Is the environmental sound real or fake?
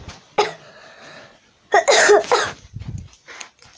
real